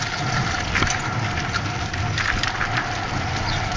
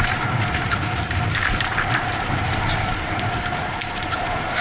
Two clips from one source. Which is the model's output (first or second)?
second